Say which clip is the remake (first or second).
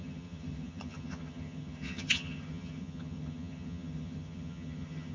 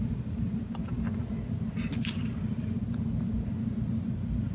first